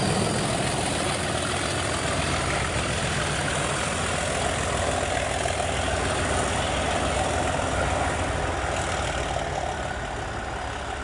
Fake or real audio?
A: real